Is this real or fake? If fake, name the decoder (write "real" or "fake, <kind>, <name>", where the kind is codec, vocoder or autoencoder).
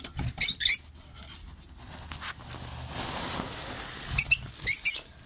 real